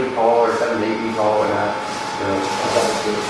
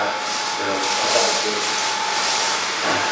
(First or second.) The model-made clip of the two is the second